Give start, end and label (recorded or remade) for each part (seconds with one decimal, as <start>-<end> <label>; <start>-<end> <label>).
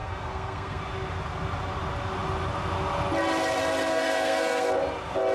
0.0-0.8 remade; 0.8-3.9 recorded; 3.9-4.7 remade; 4.7-5.3 recorded